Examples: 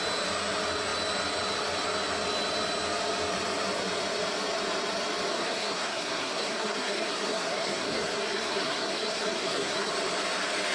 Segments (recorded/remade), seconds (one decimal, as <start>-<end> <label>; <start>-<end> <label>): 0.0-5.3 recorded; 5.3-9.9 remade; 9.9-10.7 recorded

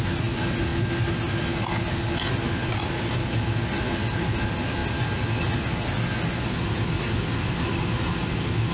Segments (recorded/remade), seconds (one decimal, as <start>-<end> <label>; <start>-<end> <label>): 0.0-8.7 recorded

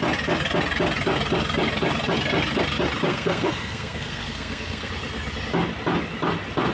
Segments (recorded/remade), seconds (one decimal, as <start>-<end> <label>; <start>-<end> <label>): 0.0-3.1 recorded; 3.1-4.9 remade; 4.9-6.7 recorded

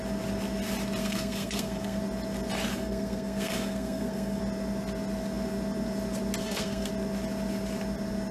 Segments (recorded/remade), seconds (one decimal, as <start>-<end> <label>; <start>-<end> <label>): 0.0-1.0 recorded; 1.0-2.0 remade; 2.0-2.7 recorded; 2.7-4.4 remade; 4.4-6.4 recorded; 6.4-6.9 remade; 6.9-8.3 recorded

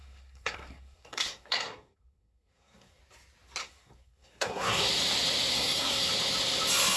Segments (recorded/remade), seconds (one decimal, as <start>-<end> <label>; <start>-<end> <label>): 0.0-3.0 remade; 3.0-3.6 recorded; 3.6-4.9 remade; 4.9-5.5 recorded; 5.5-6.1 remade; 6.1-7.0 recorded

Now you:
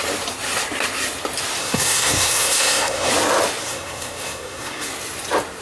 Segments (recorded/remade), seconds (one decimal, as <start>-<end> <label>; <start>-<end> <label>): 0.0-1.6 recorded; 1.6-3.1 remade; 3.1-3.6 recorded; 3.6-4.9 remade; 4.9-5.6 recorded

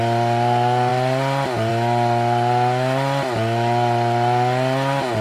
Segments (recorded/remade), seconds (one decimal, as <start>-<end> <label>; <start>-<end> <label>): 0.0-5.2 recorded

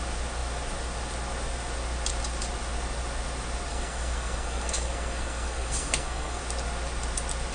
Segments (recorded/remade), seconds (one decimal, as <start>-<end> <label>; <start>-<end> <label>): 0.0-3.7 recorded; 3.7-6.4 remade; 6.4-7.5 recorded